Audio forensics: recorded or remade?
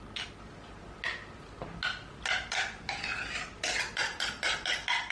recorded